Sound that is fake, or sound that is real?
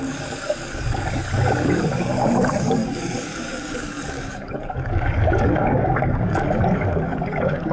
fake